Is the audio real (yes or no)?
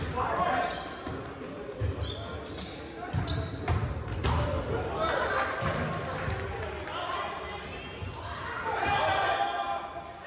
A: yes